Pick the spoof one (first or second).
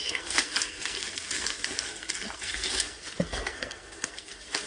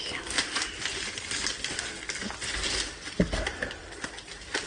first